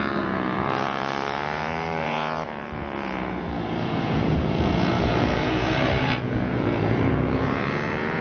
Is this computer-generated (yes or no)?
yes